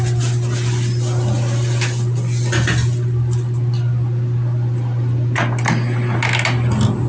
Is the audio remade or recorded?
recorded